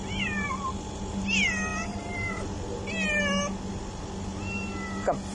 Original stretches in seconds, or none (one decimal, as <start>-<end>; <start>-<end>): 0.0-5.3